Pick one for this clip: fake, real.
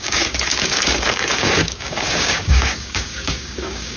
fake